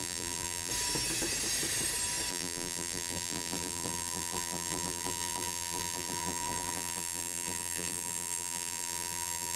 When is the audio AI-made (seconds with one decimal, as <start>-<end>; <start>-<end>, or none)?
0.0-0.7; 2.3-9.6